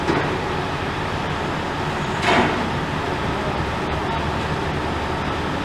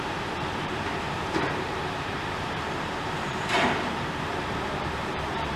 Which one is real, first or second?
first